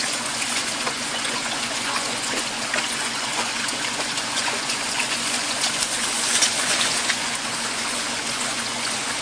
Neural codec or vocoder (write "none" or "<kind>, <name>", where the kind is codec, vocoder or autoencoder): vocoder, Vocos